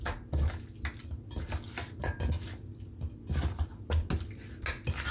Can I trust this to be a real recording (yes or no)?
yes